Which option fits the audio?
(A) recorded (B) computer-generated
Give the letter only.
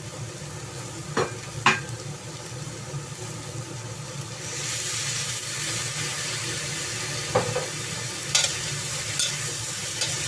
A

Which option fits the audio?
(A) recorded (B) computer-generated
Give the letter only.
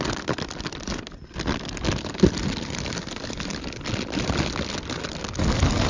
A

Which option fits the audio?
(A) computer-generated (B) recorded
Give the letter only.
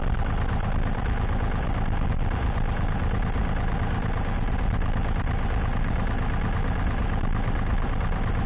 B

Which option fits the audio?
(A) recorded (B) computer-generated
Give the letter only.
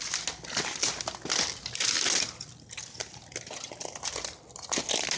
A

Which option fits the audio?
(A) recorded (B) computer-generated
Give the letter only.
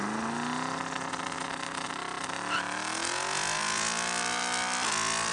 A